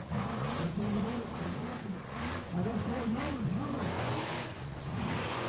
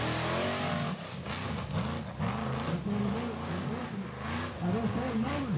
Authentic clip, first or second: second